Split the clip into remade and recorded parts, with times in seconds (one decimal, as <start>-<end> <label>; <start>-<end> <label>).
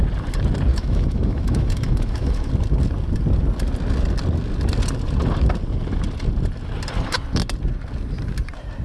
0.0-0.7 recorded; 0.7-2.5 remade; 2.5-8.8 recorded